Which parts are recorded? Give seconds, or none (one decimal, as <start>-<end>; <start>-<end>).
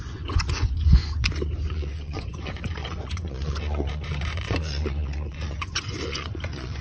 1.0-1.7